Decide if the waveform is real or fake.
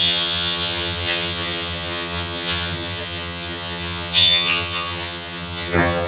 fake